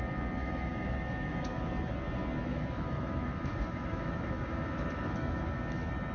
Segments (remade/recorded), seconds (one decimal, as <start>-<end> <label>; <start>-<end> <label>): 0.0-0.4 recorded; 0.4-1.7 remade; 1.7-2.5 recorded; 2.5-5.6 remade; 5.6-6.1 recorded